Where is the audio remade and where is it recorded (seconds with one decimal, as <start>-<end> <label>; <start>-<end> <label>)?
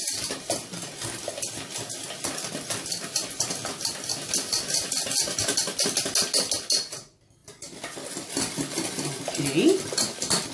0.0-10.5 recorded